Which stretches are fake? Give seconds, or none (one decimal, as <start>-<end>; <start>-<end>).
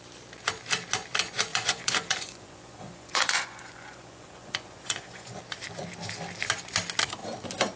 1.5-5.4